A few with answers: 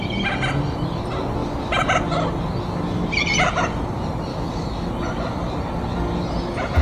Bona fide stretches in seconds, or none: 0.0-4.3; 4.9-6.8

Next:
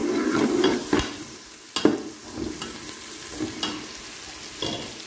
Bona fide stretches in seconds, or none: 0.0-5.1

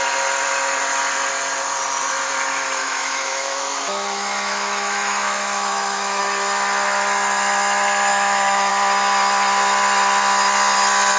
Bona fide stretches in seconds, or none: 0.0-2.8; 6.2-8.1; 8.7-11.2

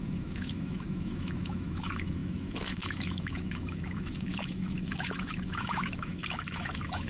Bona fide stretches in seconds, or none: none